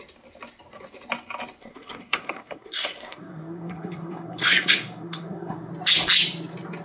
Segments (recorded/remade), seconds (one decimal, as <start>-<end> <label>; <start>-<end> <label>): 0.0-1.6 recorded; 1.6-5.7 remade; 5.7-6.8 recorded